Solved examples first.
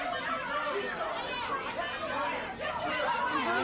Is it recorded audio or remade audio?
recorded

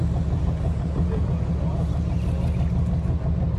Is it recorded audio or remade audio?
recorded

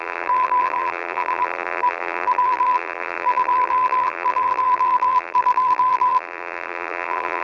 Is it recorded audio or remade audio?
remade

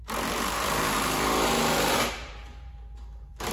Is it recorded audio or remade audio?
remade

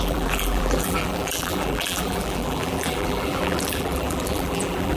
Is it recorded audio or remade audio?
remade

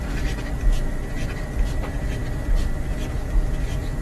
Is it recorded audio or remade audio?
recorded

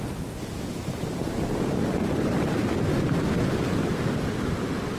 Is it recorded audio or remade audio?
recorded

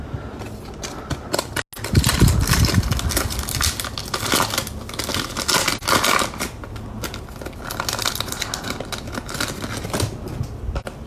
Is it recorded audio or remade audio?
recorded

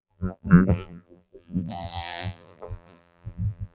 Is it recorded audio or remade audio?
remade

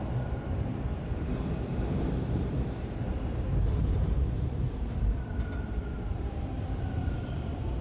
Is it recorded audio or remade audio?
remade